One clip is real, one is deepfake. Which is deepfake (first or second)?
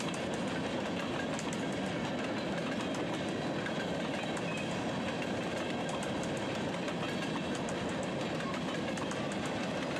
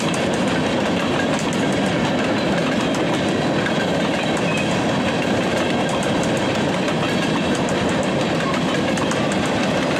second